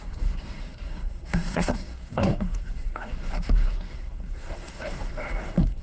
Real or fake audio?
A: fake